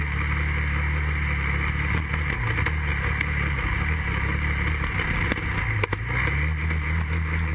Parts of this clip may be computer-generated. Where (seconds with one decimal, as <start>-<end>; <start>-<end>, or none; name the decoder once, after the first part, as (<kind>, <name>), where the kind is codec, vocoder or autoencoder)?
none